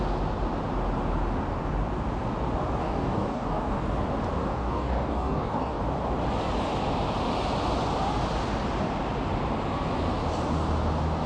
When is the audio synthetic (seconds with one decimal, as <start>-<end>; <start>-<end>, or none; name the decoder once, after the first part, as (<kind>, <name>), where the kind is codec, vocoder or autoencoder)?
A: 2.8-3.8 (codec, DAC); 4.4-5.8